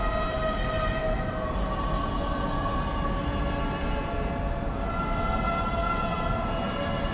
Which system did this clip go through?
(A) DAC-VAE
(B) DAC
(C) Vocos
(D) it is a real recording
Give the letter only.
D